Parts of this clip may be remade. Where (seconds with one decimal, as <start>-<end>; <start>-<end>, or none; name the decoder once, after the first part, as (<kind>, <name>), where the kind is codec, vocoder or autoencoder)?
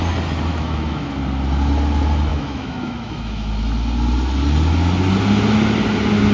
0.5-1.1 (autoencoder, DAC-VAE); 2.3-3.5